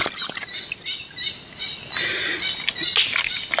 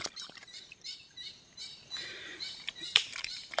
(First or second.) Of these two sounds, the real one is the first